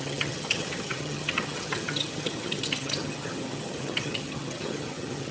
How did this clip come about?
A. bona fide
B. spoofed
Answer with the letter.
B